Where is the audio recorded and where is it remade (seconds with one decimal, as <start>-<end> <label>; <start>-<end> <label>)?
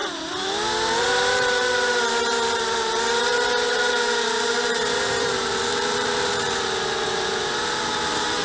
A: 0.0-1.0 recorded; 1.0-8.4 remade